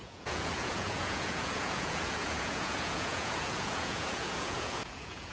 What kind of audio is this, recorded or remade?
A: remade